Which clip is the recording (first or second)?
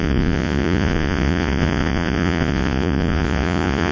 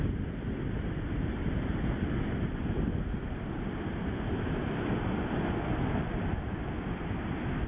second